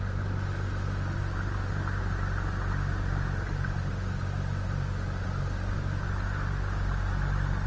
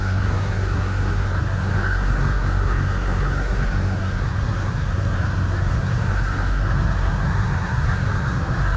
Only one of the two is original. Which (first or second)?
first